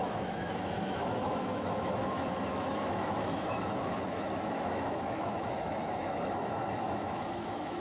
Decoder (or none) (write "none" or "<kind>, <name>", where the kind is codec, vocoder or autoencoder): autoencoder, DAC-VAE